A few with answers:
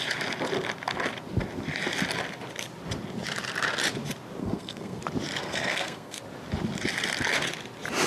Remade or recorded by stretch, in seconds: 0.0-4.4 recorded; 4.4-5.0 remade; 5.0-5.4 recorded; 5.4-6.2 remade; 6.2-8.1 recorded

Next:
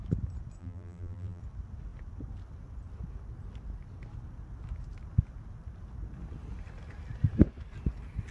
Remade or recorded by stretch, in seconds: 0.0-0.6 recorded; 0.6-1.4 remade; 1.4-8.3 recorded

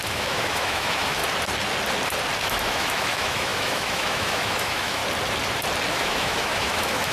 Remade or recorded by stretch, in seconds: 0.0-1.2 remade; 1.2-2.4 recorded; 2.4-5.0 remade; 5.0-5.9 recorded; 5.9-7.1 remade

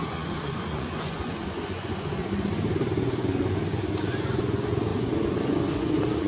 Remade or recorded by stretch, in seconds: 0.0-2.2 remade; 2.2-4.0 recorded; 4.0-6.3 remade

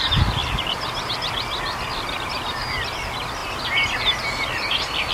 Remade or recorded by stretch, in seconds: 0.0-5.1 recorded

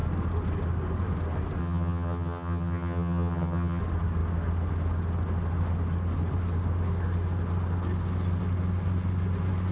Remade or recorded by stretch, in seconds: 0.0-1.6 recorded; 1.6-3.8 remade; 3.8-9.7 recorded

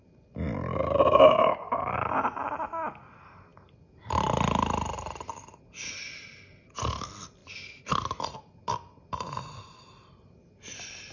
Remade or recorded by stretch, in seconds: 0.0-11.1 recorded